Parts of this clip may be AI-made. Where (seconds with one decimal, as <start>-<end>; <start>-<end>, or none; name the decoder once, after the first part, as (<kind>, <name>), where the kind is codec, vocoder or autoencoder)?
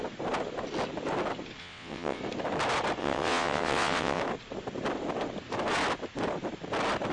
1.6-2.2 (vocoder, WaveNeXt); 3.0-4.2